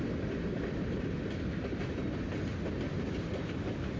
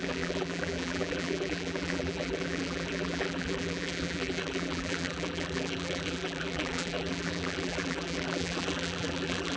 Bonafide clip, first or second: first